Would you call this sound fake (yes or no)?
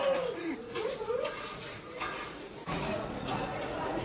yes